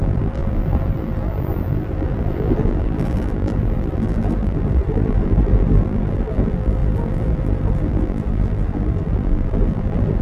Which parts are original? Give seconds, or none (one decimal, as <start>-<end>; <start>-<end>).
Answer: none